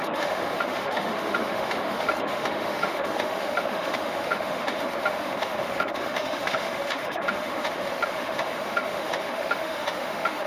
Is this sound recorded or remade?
remade